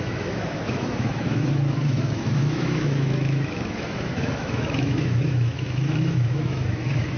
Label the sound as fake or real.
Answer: fake